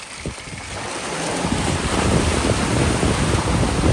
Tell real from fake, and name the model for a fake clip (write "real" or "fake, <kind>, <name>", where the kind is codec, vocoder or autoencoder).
real